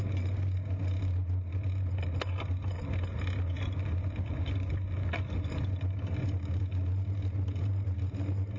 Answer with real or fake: real